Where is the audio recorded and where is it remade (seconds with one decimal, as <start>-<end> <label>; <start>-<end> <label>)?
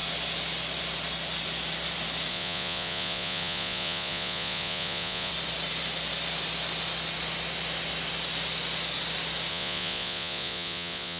0.0-2.3 recorded; 2.3-5.3 remade; 5.3-9.5 recorded; 9.5-11.2 remade